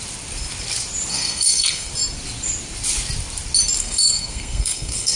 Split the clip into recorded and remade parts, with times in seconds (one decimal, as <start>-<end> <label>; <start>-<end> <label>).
0.0-1.1 recorded; 1.1-1.9 remade; 1.9-3.8 recorded; 3.8-5.2 remade